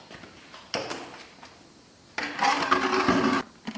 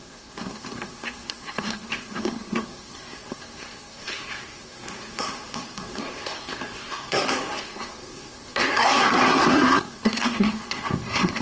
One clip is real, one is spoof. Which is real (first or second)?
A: first